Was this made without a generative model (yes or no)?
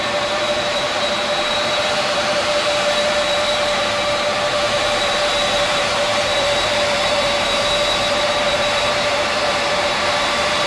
no